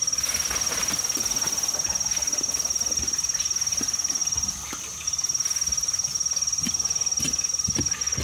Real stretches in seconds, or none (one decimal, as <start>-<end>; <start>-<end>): 0.0-8.2